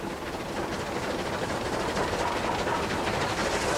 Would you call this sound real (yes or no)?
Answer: yes